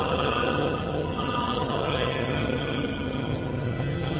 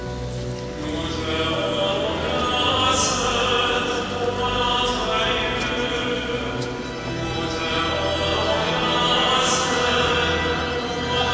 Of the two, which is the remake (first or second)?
first